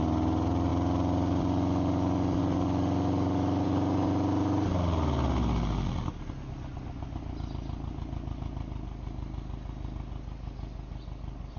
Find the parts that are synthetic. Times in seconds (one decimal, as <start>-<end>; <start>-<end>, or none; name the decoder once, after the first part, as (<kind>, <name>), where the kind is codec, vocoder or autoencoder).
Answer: none